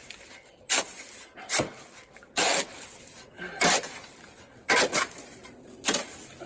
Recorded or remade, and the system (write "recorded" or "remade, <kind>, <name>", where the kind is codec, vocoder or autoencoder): recorded